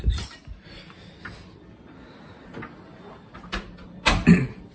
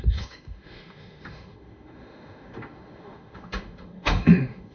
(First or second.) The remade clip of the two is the second